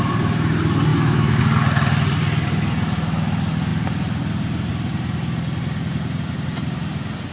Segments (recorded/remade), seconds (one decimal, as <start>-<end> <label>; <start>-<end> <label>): 0.0-0.9 recorded; 0.9-1.4 remade; 1.4-7.3 recorded